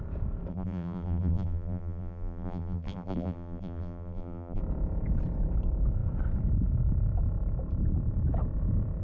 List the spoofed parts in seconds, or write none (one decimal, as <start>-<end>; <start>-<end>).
0.5-4.6